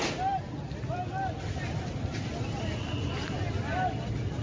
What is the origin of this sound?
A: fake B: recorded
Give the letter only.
B